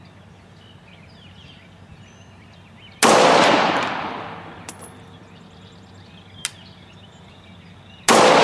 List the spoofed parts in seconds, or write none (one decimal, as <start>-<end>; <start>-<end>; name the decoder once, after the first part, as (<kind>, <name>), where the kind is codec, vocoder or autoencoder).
none